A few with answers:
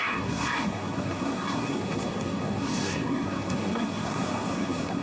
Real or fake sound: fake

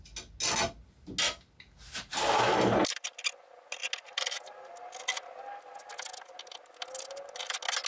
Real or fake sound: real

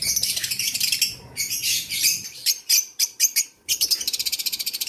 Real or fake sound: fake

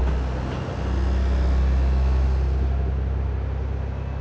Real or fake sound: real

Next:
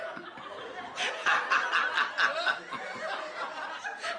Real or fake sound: real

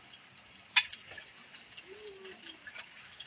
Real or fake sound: real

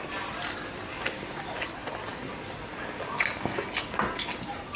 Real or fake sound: real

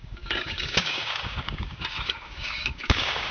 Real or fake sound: fake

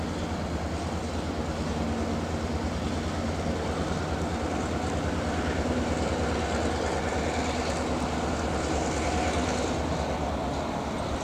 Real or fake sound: real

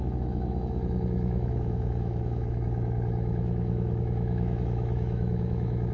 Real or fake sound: fake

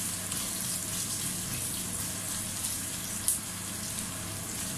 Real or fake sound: real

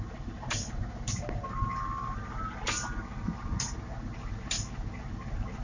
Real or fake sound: real